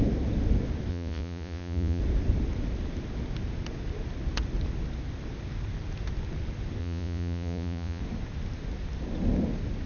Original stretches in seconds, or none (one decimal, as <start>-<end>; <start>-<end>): 0.0-0.9; 2.0-6.8; 8.0-9.9